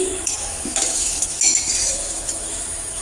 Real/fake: fake